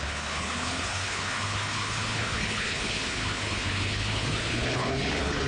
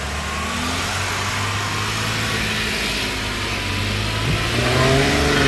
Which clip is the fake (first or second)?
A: first